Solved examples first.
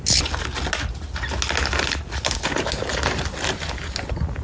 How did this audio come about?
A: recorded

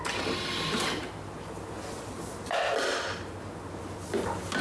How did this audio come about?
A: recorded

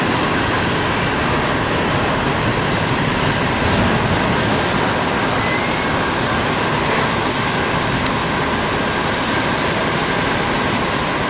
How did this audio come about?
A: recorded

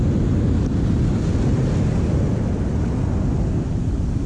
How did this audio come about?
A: recorded